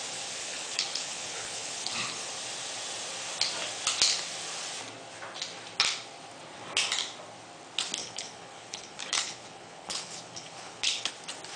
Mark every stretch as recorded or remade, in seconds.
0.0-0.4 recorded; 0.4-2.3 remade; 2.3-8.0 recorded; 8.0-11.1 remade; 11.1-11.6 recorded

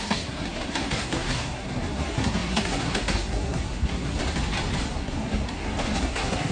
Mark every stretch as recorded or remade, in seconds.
0.0-4.2 remade; 4.2-4.9 recorded; 4.9-6.5 remade